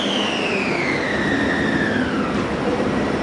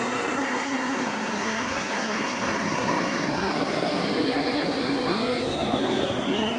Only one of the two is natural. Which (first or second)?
first